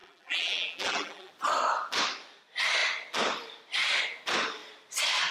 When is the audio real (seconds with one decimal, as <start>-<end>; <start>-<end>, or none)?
1.3-5.3

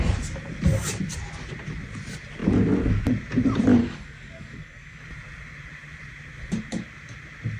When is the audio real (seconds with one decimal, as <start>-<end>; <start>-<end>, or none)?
0.0-3.8; 5.0-7.6